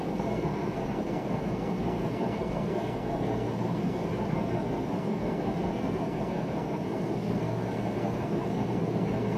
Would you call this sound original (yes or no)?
no